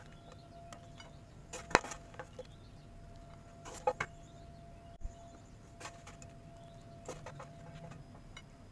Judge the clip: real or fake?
real